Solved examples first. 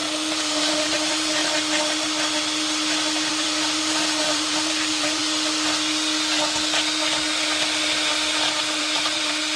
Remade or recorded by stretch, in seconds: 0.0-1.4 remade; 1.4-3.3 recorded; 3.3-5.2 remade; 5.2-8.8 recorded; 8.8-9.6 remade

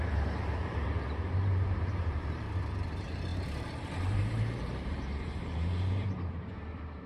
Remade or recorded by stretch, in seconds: 0.0-7.1 remade

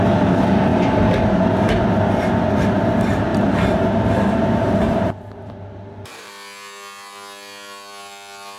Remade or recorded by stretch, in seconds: 0.0-3.3 recorded; 3.3-6.3 remade; 6.3-8.6 recorded

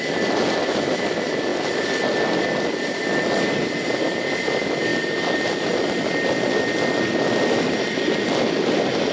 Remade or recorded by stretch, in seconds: 0.0-9.1 recorded